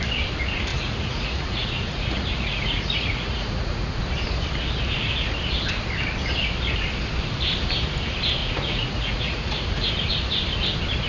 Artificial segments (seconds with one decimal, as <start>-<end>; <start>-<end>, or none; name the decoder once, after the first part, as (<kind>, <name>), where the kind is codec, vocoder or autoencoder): 0.7-4.0 (vocoder, Vocos); 8.4-9.9